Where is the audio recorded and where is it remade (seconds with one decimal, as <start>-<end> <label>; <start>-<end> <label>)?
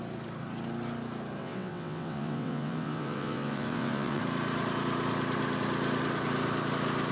0.0-1.4 recorded; 1.4-4.2 remade; 4.2-7.1 recorded